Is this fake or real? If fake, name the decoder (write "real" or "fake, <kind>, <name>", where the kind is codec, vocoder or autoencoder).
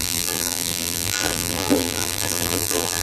fake, vocoder, BigVGAN v2